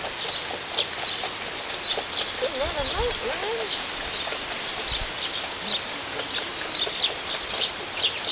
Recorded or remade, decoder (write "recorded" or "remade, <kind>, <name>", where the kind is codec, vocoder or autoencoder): recorded